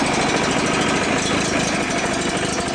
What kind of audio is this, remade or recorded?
recorded